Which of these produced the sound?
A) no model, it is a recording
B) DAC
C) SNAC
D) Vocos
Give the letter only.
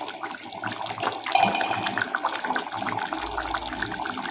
A